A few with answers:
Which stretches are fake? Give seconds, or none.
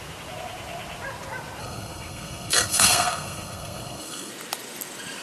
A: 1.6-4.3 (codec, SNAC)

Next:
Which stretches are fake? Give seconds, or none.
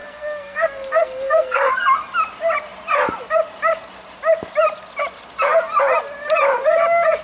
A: 0.0-1.7 (codec, SNAC)